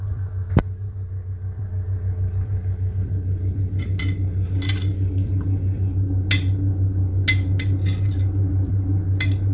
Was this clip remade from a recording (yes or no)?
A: no